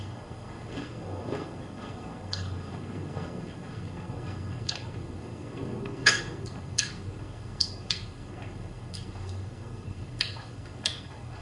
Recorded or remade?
remade